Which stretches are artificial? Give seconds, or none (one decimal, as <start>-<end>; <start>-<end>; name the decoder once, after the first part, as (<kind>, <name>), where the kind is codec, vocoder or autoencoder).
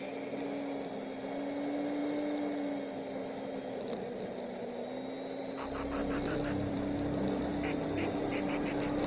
6.0-8.7 (vocoder, BigVGAN v2)